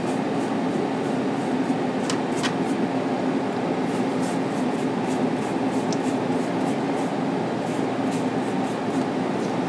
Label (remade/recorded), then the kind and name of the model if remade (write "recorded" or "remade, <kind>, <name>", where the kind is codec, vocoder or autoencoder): recorded